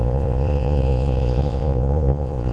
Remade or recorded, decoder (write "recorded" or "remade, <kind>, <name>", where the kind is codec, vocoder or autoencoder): remade, vocoder, Vocos